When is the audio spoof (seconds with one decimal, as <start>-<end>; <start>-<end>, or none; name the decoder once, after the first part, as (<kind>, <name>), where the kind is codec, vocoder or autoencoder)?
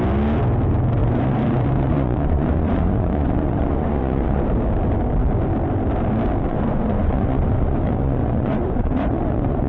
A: 1.0-4.4 (vocoder, Vocos); 6.5-9.7